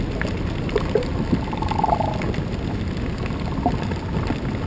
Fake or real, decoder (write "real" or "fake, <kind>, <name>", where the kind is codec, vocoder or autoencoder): real